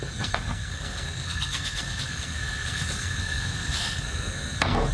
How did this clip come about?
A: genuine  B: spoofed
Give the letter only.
B